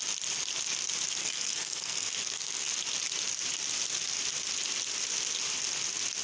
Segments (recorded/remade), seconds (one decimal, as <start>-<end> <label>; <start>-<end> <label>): 0.0-1.2 recorded; 1.2-2.8 remade; 2.8-6.2 recorded